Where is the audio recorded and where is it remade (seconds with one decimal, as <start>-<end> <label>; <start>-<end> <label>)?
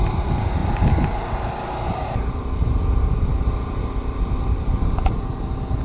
0.0-5.8 recorded